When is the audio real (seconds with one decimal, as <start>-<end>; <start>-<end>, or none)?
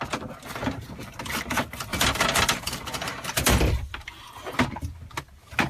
0.0-1.9; 3.7-5.7